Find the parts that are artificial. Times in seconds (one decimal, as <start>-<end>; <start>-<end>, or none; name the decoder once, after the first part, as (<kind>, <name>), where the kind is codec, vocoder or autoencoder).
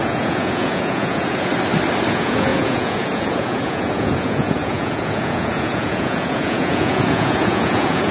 0.0-1.5 (vocoder, Vocos); 2.1-8.1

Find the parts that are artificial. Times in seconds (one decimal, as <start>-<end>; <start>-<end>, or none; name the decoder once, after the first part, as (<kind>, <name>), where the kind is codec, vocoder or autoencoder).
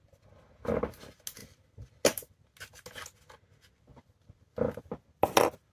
none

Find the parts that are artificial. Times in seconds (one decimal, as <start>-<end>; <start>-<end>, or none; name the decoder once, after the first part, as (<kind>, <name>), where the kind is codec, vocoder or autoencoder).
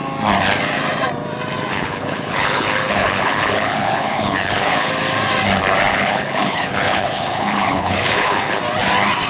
1.7-4.9 (codec, HILCodec); 5.9-8.6